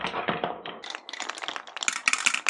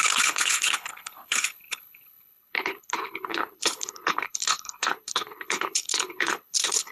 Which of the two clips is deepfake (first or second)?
second